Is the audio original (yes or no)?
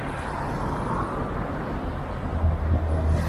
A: yes